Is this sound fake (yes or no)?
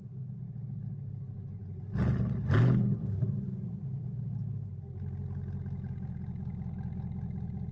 no